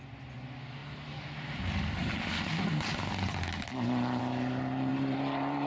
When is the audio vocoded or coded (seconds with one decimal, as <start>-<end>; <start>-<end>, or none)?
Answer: 4.9-5.7